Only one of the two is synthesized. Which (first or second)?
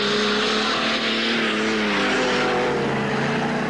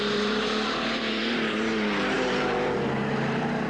second